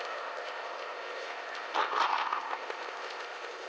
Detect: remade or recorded remade